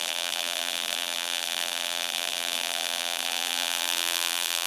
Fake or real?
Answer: fake